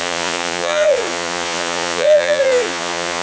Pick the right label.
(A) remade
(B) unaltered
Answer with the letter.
A